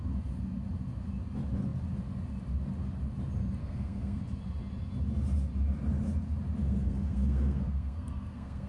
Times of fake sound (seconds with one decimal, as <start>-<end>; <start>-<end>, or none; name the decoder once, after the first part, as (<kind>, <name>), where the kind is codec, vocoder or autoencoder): 3.6-4.2 (codec, SNAC); 6.6-8.7